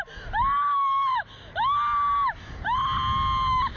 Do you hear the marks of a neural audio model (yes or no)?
no